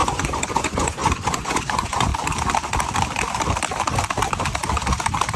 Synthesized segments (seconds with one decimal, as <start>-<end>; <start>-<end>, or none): 0.0-2.1